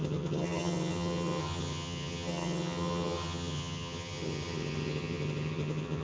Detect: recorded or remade remade